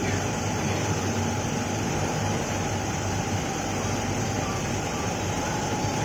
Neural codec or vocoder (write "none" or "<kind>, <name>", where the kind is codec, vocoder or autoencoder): vocoder, BigVGAN v2